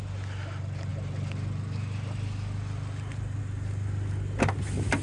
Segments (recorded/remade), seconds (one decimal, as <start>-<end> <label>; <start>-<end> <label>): 0.0-5.0 recorded